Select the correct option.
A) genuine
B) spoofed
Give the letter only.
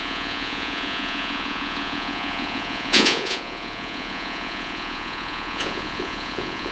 B